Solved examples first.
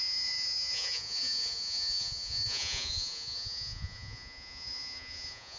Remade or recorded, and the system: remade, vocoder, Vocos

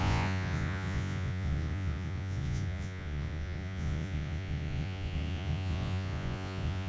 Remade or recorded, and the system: remade, vocoder, Vocos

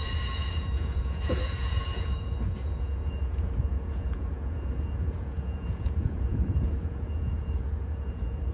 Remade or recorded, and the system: remade, vocoder, Vocos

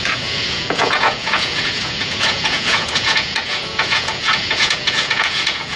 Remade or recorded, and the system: remade, vocoder, Vocos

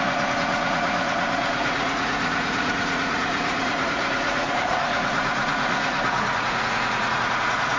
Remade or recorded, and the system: remade, vocoder, Vocos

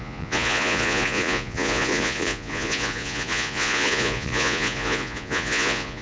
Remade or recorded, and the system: remade, vocoder, Vocos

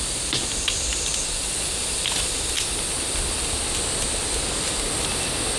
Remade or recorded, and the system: recorded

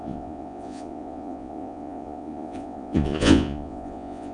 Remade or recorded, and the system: remade, vocoder, Vocos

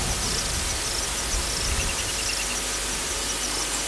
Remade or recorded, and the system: recorded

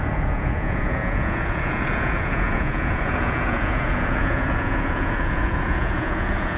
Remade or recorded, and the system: remade, vocoder, Vocos